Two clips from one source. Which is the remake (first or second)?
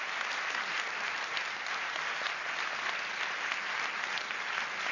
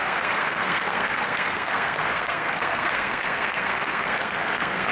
second